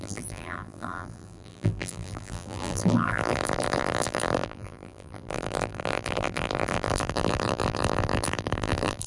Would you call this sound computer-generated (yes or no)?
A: yes